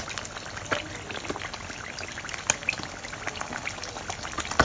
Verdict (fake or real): real